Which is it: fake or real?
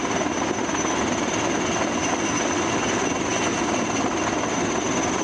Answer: real